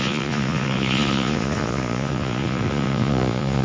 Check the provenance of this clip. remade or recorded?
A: remade